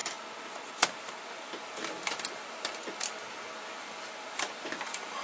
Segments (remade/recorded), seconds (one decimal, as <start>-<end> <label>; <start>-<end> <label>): 0.0-5.2 recorded

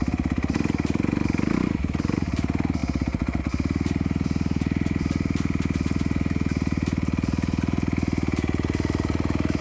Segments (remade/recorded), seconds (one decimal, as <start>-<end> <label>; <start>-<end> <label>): 0.0-9.6 recorded

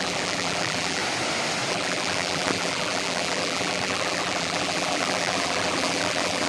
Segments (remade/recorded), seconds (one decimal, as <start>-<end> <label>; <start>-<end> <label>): 0.0-1.0 remade; 1.0-1.7 recorded; 1.7-6.5 remade

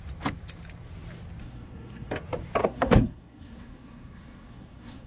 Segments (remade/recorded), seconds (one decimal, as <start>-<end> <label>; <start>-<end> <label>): 0.0-1.4 recorded; 1.4-2.1 remade; 2.1-2.6 recorded; 2.6-5.1 remade

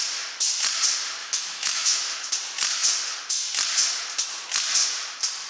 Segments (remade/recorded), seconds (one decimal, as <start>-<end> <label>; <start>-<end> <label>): 0.0-1.2 recorded; 1.2-2.3 remade; 2.3-5.5 recorded

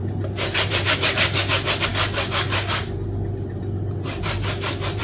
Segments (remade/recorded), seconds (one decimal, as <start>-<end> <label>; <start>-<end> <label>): 0.0-5.0 recorded

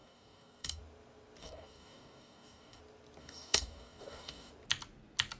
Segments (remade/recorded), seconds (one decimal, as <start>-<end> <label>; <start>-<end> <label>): 0.0-0.8 remade; 0.8-1.4 recorded; 1.4-2.8 remade; 2.8-3.2 recorded; 3.2-4.5 remade; 4.5-5.4 recorded

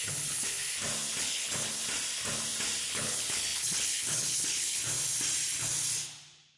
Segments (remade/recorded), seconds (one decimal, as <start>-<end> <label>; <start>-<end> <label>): 0.0-0.6 remade; 0.6-1.2 recorded; 1.2-1.8 remade; 1.8-2.9 recorded; 2.9-4.8 remade; 4.8-6.6 recorded